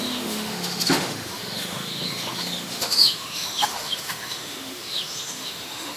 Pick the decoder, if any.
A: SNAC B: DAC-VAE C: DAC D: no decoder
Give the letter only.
B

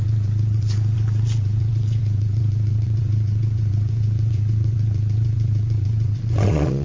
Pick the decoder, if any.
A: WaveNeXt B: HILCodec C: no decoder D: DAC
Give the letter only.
A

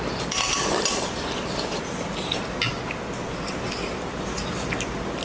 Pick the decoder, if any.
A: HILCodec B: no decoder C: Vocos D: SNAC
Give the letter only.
B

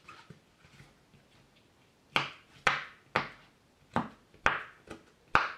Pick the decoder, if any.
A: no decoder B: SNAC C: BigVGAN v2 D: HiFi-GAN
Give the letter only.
A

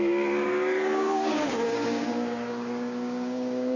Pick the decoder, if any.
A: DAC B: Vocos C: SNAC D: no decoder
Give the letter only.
A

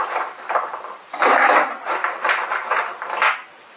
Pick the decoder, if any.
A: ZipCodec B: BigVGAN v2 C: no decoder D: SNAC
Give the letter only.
C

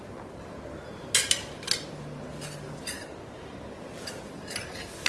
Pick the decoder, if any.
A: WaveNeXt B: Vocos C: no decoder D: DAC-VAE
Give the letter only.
C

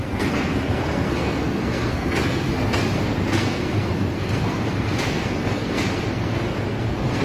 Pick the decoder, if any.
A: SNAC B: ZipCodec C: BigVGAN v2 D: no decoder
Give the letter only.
A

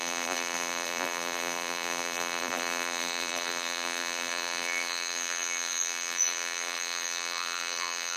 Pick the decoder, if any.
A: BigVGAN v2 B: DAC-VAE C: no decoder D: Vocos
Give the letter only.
A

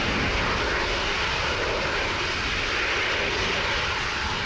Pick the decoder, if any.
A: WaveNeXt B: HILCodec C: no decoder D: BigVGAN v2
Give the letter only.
C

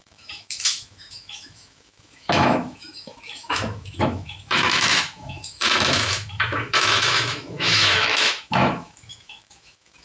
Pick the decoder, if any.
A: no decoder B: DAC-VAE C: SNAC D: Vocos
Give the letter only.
B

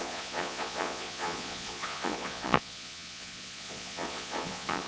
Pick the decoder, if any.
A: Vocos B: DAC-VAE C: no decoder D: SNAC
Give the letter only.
A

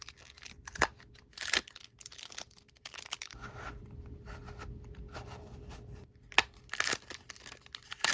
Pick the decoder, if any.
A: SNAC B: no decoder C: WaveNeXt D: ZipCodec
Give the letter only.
B